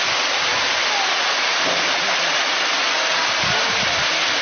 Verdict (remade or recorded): recorded